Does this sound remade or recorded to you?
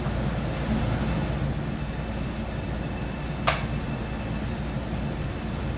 recorded